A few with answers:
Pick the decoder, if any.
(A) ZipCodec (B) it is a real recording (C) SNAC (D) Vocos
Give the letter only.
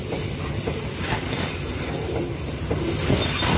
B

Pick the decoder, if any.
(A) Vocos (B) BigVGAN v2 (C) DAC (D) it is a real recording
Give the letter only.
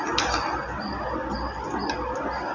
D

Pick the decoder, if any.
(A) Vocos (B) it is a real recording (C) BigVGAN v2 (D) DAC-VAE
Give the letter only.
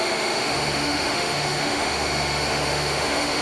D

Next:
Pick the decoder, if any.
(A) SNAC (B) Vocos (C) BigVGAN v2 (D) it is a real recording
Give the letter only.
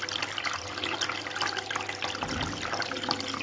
D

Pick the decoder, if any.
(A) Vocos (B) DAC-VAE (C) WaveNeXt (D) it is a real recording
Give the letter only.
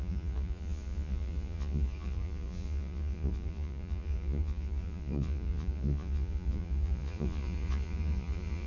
A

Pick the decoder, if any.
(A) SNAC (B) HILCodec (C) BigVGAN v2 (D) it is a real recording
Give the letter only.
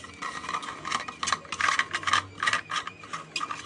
D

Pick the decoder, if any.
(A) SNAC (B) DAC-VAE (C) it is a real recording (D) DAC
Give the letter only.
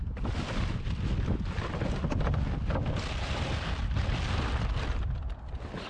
C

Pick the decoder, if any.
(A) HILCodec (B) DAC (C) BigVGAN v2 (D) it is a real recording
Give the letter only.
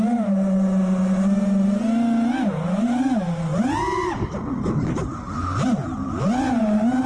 C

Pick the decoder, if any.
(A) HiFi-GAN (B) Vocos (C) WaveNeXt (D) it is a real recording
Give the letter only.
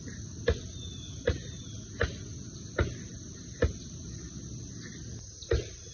D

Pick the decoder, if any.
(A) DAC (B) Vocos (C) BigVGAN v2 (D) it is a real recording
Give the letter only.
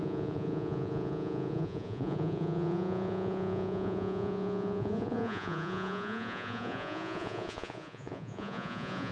B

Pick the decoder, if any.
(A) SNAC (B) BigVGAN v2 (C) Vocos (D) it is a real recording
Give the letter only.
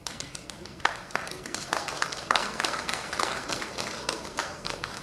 A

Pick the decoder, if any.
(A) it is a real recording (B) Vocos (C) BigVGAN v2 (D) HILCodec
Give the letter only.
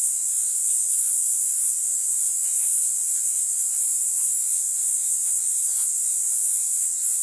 B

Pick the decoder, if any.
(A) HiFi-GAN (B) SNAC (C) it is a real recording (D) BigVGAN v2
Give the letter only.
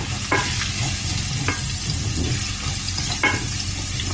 C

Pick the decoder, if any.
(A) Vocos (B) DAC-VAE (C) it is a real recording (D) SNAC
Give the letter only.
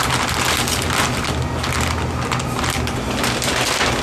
C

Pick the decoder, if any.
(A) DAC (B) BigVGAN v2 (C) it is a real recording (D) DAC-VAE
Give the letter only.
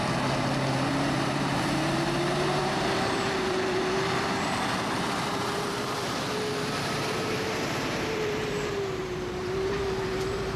B